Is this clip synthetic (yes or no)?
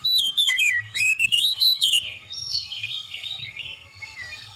yes